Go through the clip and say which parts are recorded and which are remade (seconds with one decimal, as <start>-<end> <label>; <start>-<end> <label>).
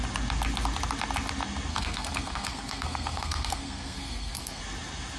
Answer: 0.0-1.7 recorded; 1.7-4.6 remade; 4.6-5.2 recorded